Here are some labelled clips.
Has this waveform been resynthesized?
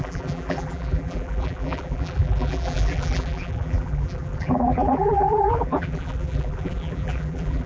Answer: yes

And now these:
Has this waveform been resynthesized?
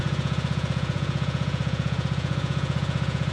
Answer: yes